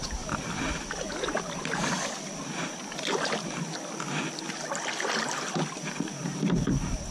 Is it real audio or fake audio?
real